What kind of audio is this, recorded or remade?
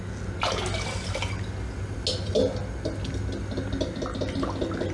recorded